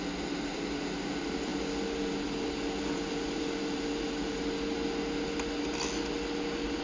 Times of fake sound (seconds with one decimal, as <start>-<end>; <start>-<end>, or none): none